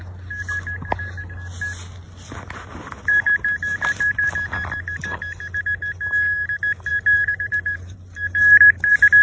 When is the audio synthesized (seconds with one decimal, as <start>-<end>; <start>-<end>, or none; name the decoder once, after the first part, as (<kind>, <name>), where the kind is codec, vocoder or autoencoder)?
3.7-4.3 (vocoder, BigVGAN v2); 6.9-8.4